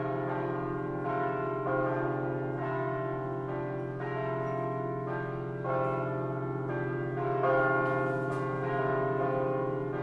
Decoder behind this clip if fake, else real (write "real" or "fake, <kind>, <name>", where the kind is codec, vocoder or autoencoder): real